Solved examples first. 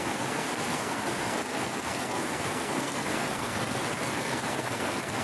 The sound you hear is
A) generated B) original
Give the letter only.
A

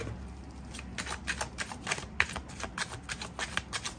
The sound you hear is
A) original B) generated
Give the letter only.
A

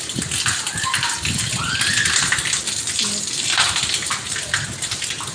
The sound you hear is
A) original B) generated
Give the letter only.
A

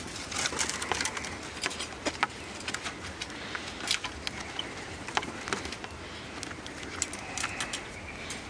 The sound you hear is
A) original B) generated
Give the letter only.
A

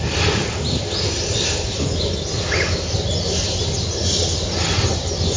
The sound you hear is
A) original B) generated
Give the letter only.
A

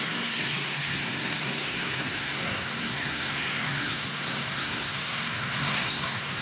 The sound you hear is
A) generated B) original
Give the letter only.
A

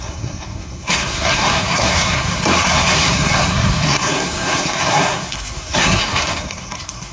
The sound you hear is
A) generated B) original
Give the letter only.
A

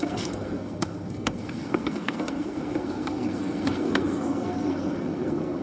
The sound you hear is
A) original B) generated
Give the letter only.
B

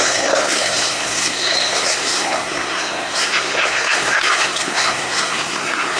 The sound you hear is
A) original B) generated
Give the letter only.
B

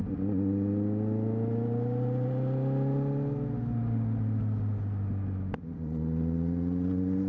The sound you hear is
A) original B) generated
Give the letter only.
A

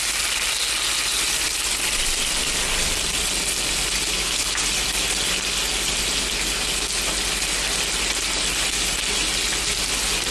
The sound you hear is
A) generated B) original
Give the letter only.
B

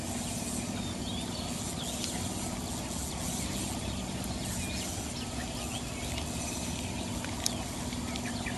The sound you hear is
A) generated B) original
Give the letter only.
B